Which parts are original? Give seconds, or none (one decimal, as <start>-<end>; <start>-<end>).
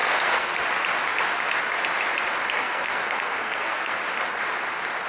0.6-2.6; 4.0-5.1